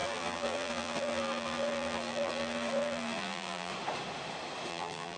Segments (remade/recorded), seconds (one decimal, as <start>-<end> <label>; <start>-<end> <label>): 0.0-3.7 remade; 3.7-4.7 recorded; 4.7-5.2 remade